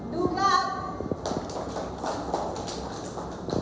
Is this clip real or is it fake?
real